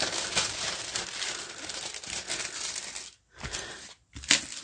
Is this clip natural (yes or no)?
yes